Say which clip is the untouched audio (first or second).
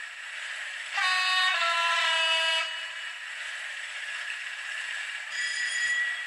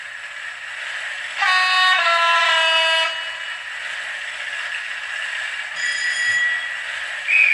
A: second